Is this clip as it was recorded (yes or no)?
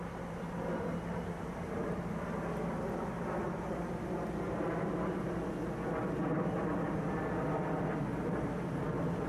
yes